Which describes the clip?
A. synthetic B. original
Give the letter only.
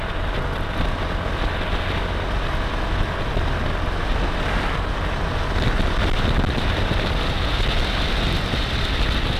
B